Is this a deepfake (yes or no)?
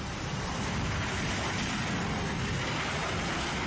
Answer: no